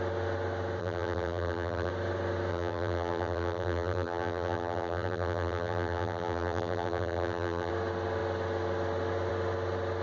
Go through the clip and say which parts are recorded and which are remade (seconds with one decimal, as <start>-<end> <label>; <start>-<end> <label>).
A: 0.0-0.8 recorded; 0.8-1.9 remade; 1.9-2.5 recorded; 2.5-7.7 remade; 7.7-10.0 recorded